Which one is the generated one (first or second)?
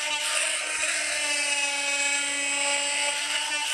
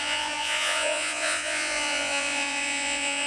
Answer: second